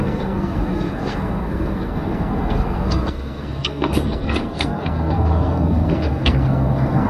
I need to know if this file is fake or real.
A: fake